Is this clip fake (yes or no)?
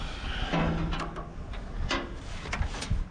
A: no